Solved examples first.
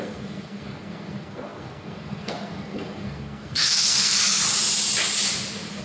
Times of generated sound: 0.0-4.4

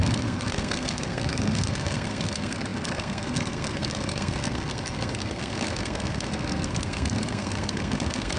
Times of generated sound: 0.0-8.4

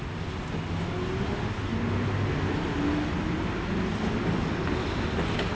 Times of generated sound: none

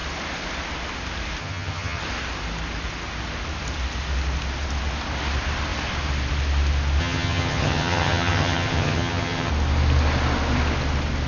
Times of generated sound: 1.4-2.0; 7.0-9.5